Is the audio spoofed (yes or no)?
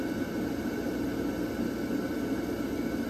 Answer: no